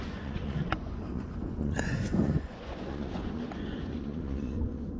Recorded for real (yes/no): no